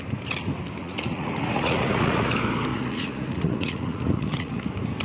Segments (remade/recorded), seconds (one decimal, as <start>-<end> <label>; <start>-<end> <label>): 0.0-0.8 recorded; 0.8-2.3 remade; 2.3-2.7 recorded; 2.7-4.6 remade; 4.6-5.0 recorded